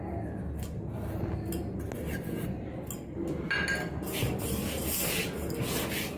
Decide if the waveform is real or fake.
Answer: real